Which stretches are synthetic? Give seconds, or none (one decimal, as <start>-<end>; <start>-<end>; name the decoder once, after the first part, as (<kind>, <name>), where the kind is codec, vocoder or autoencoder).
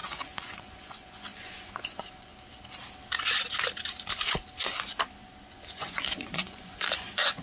0.0-2.3 (vocoder, Vocos); 5.5-7.4